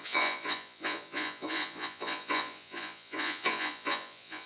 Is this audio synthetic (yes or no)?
yes